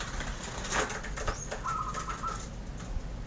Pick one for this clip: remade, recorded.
recorded